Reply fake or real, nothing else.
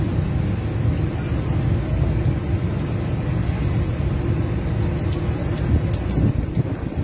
real